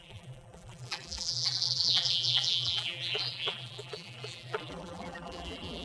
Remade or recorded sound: remade